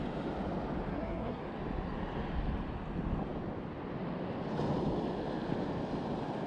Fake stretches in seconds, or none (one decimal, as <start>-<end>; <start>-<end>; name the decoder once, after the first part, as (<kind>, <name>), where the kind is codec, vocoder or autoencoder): 0.9-1.4 (codec, SNAC)